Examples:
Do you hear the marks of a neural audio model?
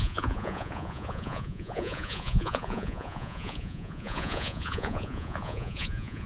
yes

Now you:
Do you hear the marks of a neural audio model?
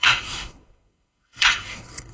yes